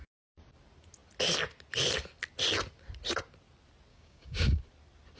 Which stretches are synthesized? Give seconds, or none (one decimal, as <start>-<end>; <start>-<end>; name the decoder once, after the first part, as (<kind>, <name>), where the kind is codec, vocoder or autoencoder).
3.9-4.6 (codec, DAC)